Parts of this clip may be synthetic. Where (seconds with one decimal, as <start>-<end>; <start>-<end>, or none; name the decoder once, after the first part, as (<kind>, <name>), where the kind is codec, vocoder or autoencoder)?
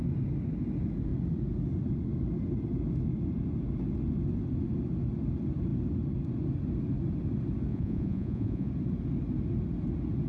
7.7-8.7 (vocoder, Vocos)